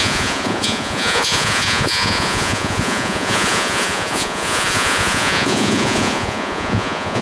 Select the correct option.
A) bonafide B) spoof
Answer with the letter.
B